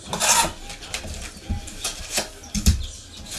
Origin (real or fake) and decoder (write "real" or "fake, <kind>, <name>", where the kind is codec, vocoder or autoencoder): real